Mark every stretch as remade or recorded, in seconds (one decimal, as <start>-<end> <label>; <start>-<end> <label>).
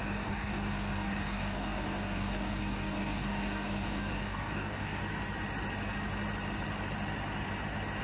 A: 0.0-5.0 remade; 5.0-8.0 recorded